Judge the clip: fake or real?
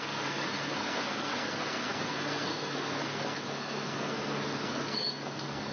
fake